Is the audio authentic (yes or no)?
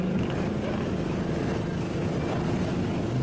yes